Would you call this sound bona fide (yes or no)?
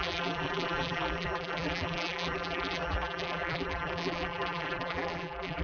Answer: no